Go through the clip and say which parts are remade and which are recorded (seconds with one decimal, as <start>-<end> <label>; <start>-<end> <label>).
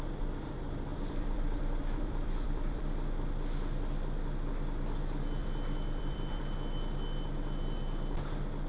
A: 0.0-0.9 recorded; 0.9-2.8 remade; 2.8-5.4 recorded; 5.4-6.4 remade; 6.4-8.7 recorded